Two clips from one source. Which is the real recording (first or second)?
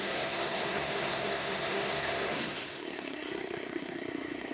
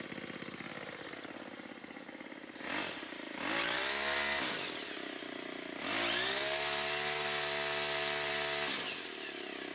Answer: second